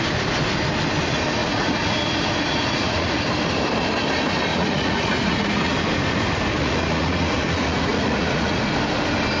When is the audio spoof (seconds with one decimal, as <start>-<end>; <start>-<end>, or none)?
1.4-3.2; 4.5-5.7; 6.6-8.6